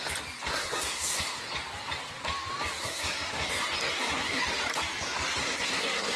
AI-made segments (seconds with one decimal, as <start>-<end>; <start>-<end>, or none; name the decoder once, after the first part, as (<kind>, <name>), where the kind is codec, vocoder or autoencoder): 0.5-1.4 (codec, SNAC); 2.8-3.5; 3.9-4.4; 5.4-6.2